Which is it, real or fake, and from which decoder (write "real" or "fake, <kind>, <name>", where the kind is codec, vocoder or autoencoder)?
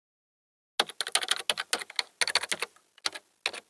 real